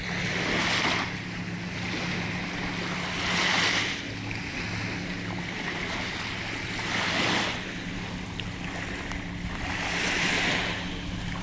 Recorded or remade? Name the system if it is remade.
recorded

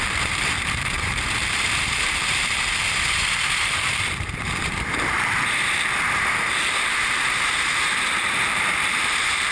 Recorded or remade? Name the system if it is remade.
remade, vocoder, BigVGAN v2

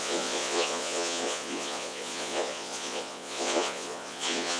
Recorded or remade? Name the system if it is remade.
remade, vocoder, Vocos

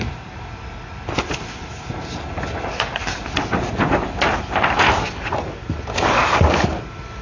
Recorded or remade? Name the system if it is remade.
recorded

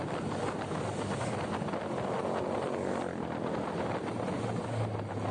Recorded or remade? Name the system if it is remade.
recorded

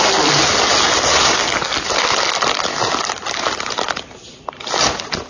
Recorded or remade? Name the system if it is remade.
recorded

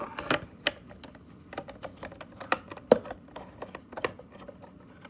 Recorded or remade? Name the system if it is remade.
recorded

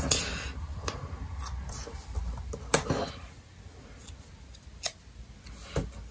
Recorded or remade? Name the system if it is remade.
recorded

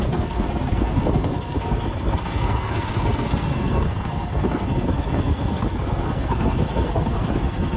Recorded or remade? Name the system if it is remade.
remade, codec, SNAC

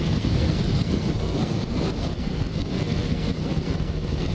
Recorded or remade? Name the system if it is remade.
remade, codec, SNAC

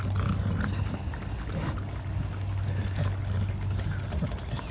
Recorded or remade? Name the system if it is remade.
recorded